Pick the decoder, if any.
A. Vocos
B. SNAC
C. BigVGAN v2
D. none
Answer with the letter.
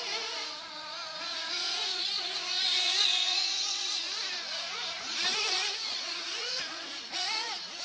A